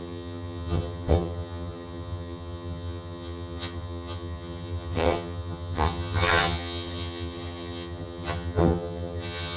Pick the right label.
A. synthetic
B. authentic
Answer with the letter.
A